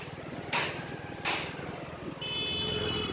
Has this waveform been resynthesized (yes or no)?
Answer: no